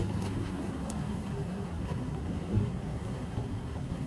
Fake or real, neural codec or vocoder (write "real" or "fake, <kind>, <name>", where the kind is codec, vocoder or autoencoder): fake, codec, SNAC